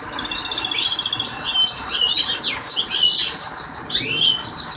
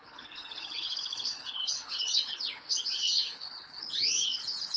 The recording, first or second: first